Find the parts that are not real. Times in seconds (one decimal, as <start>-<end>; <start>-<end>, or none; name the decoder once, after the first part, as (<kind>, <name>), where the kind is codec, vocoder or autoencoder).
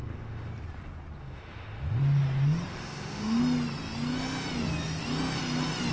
0.0-0.5 (autoencoder, DAC-VAE); 1.2-2.0; 2.7-3.4